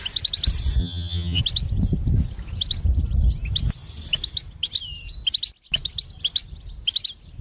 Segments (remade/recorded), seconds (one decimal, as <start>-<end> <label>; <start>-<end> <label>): 0.0-0.8 recorded; 0.8-1.4 remade; 1.4-7.4 recorded